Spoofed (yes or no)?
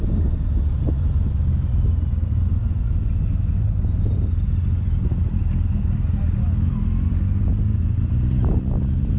no